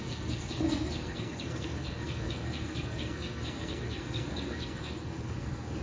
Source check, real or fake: fake